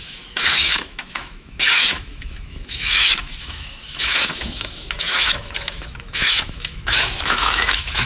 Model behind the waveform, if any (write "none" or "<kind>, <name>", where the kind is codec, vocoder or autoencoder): autoencoder, DAC-VAE